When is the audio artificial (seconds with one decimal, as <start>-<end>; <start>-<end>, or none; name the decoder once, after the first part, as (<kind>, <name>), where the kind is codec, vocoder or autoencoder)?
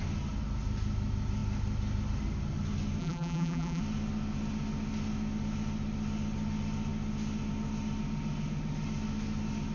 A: 3.0-3.8 (vocoder, BigVGAN v2)